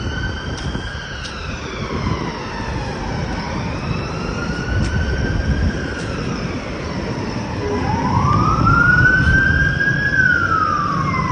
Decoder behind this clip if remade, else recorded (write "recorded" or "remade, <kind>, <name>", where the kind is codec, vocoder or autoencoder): recorded